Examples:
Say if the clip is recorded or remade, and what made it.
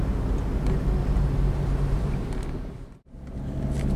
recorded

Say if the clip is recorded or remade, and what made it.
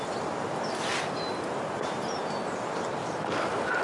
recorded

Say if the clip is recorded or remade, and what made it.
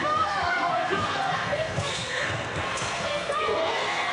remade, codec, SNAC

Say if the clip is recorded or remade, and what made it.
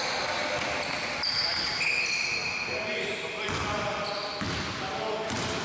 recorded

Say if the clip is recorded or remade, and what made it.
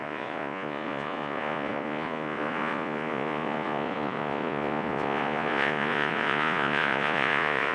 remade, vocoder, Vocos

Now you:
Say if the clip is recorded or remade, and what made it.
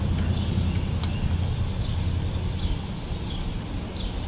recorded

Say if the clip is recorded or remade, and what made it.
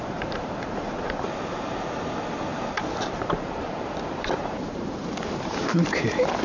remade, vocoder, BigVGAN v2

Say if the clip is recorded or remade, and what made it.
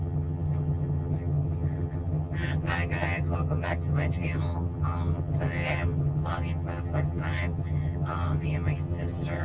remade, vocoder, HiFi-GAN